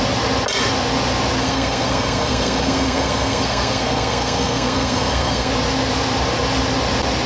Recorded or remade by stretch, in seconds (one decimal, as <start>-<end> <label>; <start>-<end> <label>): 0.0-1.4 recorded; 1.4-5.5 remade; 5.5-7.3 recorded